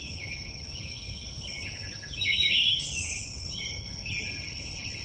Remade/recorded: remade